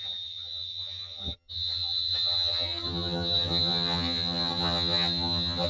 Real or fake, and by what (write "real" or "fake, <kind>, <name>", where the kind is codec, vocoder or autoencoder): fake, vocoder, HiFi-GAN